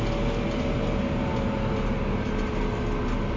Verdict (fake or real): real